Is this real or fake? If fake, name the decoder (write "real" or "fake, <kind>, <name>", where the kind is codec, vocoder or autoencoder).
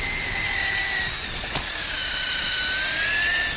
real